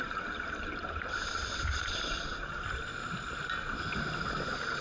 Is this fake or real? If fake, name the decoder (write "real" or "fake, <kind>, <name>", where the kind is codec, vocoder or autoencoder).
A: real